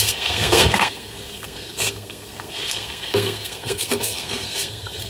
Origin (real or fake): fake